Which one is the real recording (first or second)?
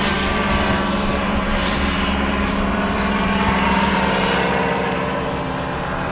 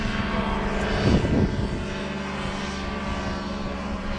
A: second